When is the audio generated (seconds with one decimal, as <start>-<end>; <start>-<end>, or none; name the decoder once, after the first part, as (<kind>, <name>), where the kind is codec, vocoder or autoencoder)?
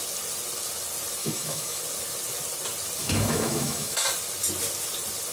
1.2-1.8 (autoencoder, DAC-VAE); 3.0-4.0